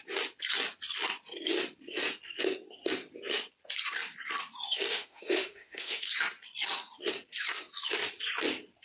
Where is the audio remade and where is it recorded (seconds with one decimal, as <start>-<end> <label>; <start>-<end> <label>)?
0.0-4.9 recorded; 4.9-6.1 remade; 6.1-8.8 recorded